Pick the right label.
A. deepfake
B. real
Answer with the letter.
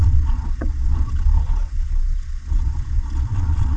A